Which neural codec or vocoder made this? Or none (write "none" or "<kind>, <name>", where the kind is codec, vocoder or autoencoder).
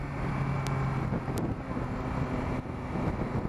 none